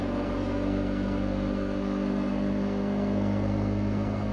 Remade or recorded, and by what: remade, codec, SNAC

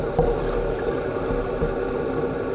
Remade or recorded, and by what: recorded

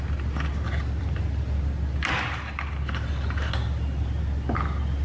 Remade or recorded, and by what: recorded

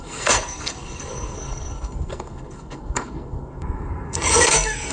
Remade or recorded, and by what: remade, codec, SNAC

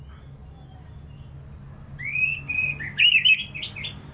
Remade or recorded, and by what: recorded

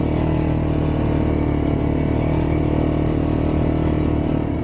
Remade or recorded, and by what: recorded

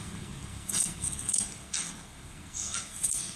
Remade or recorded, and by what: remade, codec, SNAC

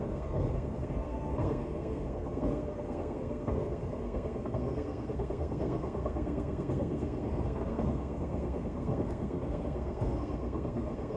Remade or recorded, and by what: remade, codec, SNAC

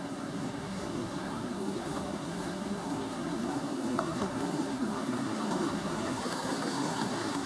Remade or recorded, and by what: remade, codec, SNAC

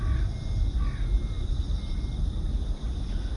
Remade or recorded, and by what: recorded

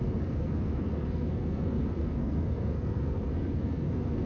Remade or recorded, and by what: remade, codec, SNAC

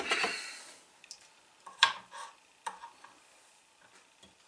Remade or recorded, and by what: recorded